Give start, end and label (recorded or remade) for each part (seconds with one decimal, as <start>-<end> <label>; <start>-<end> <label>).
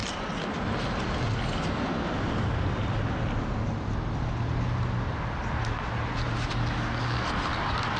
0.0-0.6 remade; 0.6-8.0 recorded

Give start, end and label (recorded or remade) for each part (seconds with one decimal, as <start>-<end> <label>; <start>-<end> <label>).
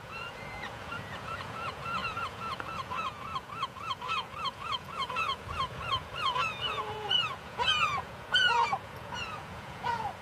0.0-10.2 remade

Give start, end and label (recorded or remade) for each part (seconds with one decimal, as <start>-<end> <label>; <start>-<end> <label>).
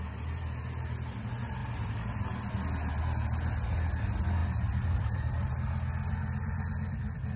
0.0-4.4 recorded; 4.4-5.5 remade; 5.5-7.4 recorded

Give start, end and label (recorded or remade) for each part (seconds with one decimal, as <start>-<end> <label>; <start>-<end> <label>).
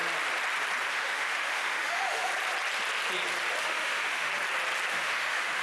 0.0-0.9 recorded; 0.9-2.3 remade; 2.3-3.6 recorded; 3.6-4.3 remade; 4.3-4.9 recorded; 4.9-5.6 remade